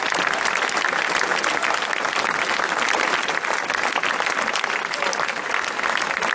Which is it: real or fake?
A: real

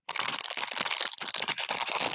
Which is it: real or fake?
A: fake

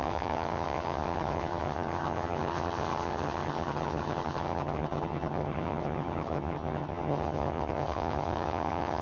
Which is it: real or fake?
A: fake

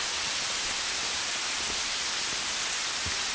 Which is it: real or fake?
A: real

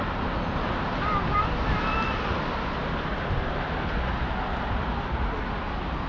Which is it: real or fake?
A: real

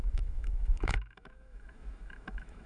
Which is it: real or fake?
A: fake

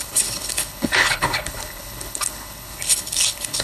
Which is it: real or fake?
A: fake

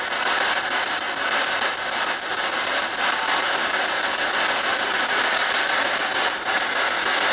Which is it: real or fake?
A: real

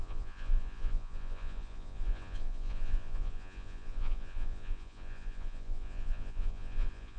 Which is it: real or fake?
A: fake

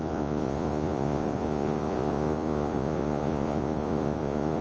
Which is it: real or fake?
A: fake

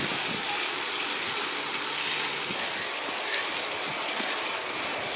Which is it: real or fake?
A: real